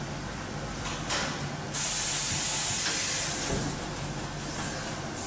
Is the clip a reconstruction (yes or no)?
no